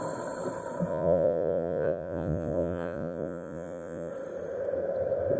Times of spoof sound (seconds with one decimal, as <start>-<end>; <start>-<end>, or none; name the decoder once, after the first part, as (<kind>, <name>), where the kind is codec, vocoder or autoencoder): 0.9-4.1 (vocoder, Vocos)